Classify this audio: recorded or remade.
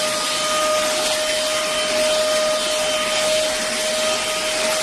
recorded